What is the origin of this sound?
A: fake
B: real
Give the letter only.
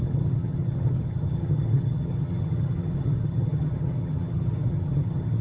A